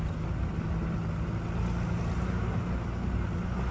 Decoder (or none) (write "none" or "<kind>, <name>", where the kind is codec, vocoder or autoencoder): none